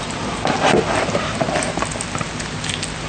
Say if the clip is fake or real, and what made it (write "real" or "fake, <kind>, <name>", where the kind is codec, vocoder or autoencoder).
real